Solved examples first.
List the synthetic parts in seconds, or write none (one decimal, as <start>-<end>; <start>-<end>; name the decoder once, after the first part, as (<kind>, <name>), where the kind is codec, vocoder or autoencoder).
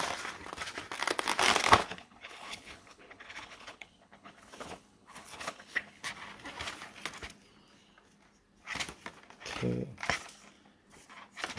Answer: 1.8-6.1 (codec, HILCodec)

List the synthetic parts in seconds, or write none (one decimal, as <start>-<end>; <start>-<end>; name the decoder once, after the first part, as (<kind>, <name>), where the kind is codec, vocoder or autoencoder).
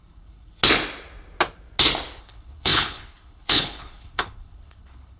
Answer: 0.0-0.6 (codec, HILCodec); 2.2-5.2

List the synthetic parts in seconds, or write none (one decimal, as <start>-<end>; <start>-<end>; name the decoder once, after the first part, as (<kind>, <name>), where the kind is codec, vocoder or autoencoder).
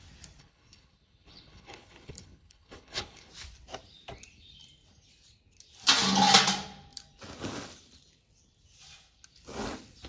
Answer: 0.4-3.3 (codec, HILCodec)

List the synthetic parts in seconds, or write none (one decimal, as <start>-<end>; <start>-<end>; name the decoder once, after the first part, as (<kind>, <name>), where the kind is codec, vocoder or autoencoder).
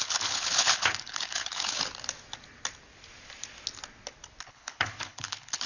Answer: 0.0-1.8 (codec, HILCodec); 4.4-5.7